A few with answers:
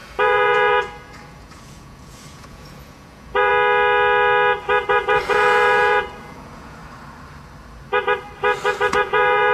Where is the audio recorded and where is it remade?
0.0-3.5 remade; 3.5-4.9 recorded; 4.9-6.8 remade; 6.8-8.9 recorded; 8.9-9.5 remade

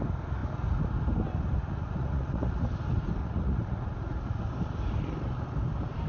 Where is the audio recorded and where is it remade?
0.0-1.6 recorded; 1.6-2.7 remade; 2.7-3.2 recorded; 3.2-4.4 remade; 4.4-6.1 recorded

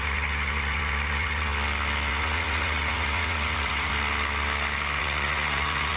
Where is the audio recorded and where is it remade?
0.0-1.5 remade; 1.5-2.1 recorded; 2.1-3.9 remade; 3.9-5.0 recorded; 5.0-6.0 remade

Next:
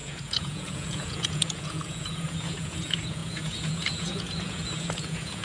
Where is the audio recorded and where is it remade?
0.0-5.4 remade

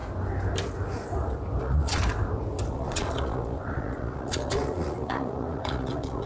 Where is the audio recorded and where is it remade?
0.0-1.6 recorded; 1.6-2.0 remade; 2.0-2.7 recorded; 2.7-6.3 remade

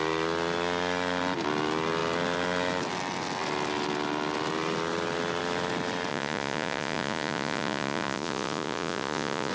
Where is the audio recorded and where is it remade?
0.0-6.1 recorded; 6.1-9.5 remade